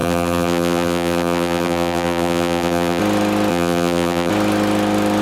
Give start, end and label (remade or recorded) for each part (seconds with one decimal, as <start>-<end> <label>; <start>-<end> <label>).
0.0-3.0 remade; 3.0-3.5 recorded; 3.5-4.3 remade; 4.3-5.2 recorded